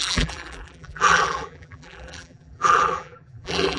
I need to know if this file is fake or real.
fake